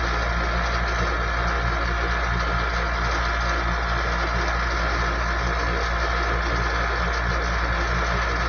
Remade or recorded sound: recorded